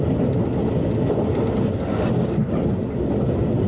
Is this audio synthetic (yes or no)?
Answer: no